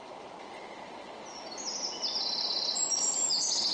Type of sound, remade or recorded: recorded